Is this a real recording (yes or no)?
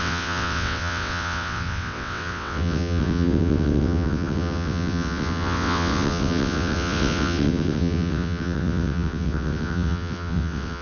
no